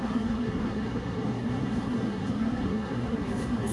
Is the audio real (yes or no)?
no